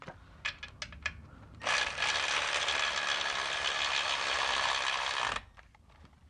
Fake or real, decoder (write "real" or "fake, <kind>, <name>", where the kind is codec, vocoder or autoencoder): real